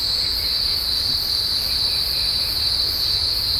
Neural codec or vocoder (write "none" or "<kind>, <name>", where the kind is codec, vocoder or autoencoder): none